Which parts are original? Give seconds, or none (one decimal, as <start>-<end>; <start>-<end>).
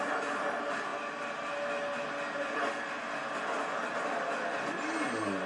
0.0-5.5